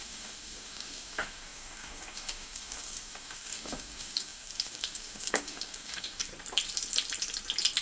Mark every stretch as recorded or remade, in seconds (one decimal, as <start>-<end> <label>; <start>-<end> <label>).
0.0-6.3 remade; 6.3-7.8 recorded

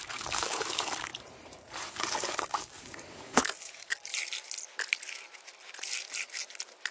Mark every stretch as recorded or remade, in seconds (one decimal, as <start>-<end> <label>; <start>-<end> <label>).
0.0-1.1 remade; 1.1-1.9 recorded; 1.9-4.1 remade; 4.1-6.9 recorded

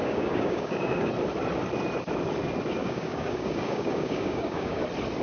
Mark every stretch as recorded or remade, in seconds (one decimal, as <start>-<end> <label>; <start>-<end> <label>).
0.0-1.1 remade; 1.1-2.8 recorded; 2.8-4.8 remade; 4.8-5.2 recorded

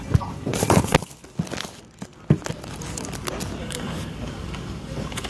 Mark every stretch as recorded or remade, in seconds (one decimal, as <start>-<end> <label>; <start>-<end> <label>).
0.0-3.6 recorded; 3.6-5.3 remade